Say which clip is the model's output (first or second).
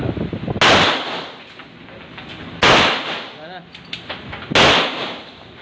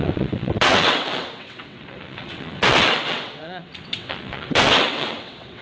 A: second